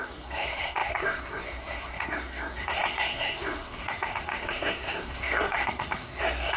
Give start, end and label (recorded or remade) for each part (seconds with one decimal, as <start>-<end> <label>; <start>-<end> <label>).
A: 0.0-6.6 remade